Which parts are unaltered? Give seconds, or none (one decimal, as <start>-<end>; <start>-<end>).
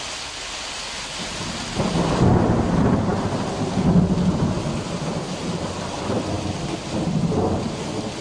0.0-8.2